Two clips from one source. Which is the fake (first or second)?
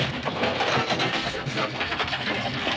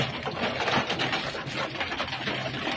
first